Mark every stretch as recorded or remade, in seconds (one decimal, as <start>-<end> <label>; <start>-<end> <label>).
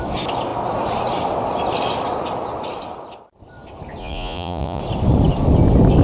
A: 0.0-4.0 recorded; 4.0-4.8 remade; 4.8-6.0 recorded